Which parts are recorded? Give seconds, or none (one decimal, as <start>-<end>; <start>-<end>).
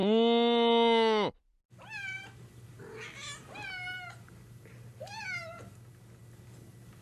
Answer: 0.0-7.0